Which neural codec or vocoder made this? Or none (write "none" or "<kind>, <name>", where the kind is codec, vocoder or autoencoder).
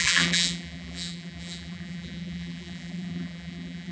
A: vocoder, BigVGAN v2